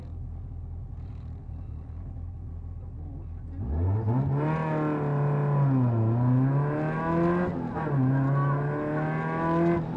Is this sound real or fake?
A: real